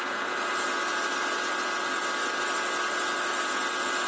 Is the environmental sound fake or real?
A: real